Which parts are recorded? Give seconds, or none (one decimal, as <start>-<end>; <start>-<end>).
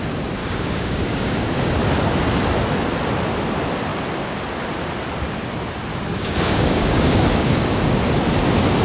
0.0-0.4; 1.7-5.9; 8.0-8.8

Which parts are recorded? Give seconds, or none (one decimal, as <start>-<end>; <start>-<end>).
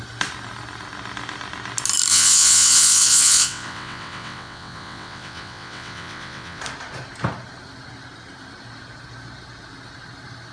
0.0-2.1; 6.6-10.5